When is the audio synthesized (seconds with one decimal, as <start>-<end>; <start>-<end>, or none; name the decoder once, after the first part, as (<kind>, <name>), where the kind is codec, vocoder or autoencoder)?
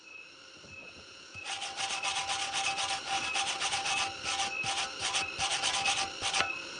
0.8-1.4 (vocoder, Vocos)